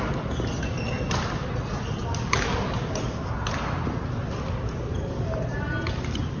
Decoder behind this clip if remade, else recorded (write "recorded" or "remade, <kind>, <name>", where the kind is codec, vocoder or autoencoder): recorded